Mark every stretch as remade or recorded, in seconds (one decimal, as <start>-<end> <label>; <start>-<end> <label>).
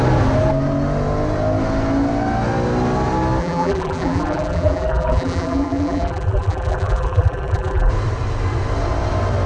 0.0-3.4 recorded; 3.4-7.9 remade; 7.9-9.5 recorded